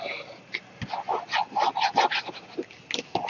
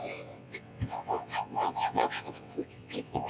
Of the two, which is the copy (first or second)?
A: second